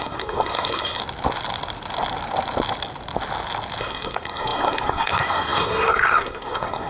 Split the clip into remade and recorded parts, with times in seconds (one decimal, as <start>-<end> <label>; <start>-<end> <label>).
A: 0.0-1.0 remade; 1.0-3.8 recorded; 3.8-6.9 remade